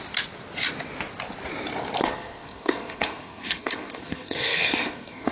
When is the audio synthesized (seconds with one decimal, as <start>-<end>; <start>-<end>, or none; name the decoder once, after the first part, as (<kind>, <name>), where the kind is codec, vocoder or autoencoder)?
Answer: 2.0-5.3 (codec, SNAC)